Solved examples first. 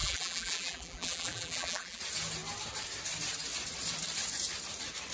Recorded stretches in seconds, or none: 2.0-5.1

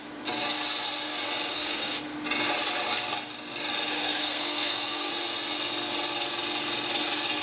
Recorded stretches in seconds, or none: 0.0-1.5; 2.0-3.9; 5.1-7.4

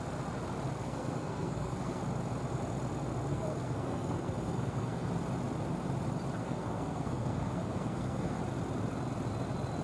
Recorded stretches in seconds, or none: 0.0-0.8; 2.0-3.3; 5.1-6.4; 8.4-9.8

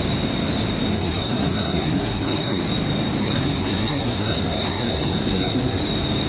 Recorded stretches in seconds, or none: 0.0-0.9; 2.6-3.2; 5.8-6.3

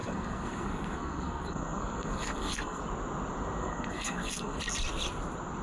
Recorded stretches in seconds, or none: 2.8-3.6; 4.6-5.6